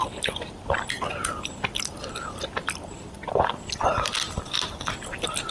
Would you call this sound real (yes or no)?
yes